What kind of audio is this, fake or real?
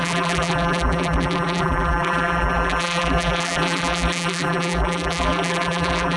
fake